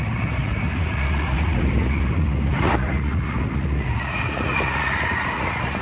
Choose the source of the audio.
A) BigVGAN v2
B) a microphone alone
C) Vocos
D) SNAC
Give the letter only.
C